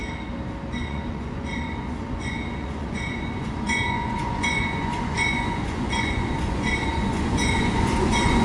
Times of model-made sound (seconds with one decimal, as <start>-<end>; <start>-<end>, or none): 0.8-8.4